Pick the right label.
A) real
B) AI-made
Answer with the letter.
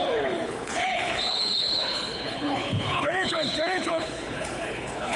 B